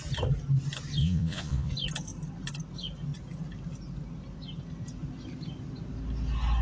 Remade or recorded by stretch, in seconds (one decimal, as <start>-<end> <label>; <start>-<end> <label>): 0.0-1.0 recorded; 1.0-1.7 remade; 1.7-6.6 recorded